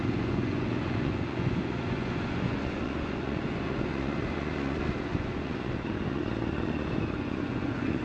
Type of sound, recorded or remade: remade